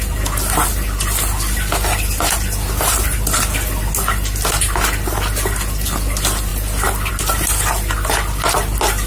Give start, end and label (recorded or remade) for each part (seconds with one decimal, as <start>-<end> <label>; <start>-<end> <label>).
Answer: 0.0-9.1 recorded